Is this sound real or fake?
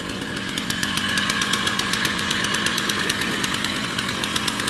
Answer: fake